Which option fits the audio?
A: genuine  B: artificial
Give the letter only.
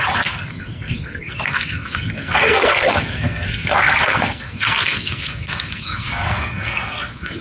B